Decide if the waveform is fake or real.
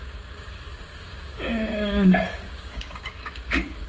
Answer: fake